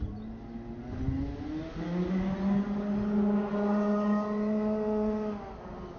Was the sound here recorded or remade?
recorded